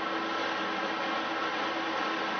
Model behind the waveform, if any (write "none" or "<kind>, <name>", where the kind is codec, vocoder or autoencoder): none